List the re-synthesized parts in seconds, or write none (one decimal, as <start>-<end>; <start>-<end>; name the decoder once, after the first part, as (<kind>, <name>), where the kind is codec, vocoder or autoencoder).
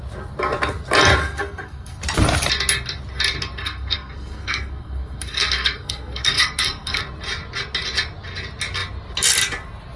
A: 1.2-2.0 (codec, SNAC); 3.6-7.0